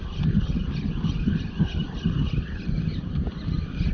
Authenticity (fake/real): real